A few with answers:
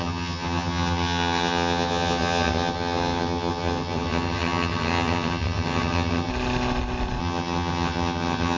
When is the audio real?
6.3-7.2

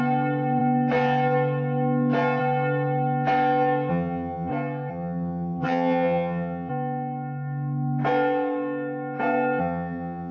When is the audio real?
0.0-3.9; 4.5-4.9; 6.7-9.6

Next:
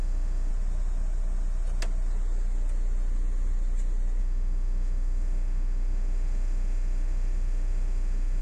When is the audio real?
0.5-4.2

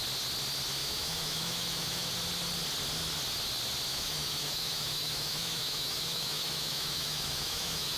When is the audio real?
0.0-0.8; 2.1-3.9